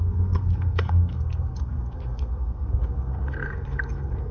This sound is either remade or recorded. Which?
remade